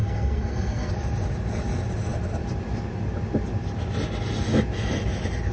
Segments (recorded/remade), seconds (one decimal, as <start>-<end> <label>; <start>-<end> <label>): 0.0-0.9 remade; 0.9-5.5 recorded